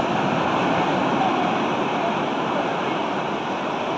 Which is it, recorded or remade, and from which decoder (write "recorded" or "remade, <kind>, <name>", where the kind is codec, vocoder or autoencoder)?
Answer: recorded